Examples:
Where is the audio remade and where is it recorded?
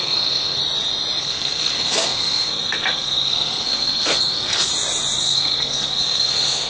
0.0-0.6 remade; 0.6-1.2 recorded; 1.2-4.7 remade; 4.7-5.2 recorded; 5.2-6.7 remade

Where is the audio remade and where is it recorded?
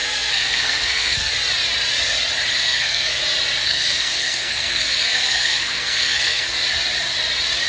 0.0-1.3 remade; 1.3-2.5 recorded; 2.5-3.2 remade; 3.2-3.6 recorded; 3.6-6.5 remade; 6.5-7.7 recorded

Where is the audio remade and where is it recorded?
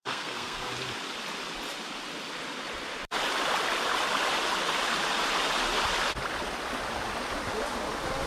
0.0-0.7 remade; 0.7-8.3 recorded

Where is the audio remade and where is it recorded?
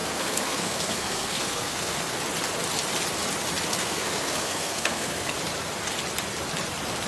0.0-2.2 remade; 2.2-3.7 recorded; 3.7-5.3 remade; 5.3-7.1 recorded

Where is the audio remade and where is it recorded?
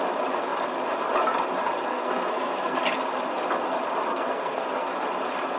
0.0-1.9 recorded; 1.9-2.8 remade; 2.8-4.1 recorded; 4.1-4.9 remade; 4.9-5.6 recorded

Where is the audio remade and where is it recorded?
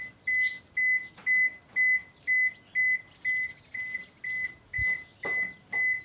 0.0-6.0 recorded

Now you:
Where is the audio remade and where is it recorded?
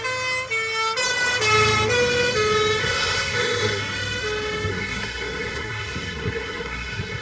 0.0-2.8 recorded; 2.8-3.8 remade; 3.8-4.7 recorded; 4.7-7.2 remade